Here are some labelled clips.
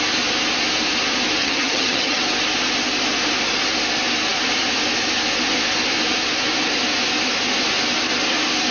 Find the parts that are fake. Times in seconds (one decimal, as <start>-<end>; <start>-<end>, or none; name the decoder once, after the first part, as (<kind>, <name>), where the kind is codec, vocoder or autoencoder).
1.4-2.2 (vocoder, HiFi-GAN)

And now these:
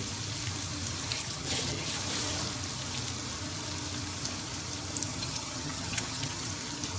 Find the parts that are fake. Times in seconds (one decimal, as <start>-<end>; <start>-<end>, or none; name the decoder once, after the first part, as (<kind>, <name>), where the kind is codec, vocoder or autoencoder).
1.2-1.9 (vocoder, HiFi-GAN); 5.1-6.5

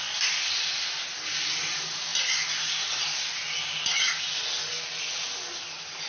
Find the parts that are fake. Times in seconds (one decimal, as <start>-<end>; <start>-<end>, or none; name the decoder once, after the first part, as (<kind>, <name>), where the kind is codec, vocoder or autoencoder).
none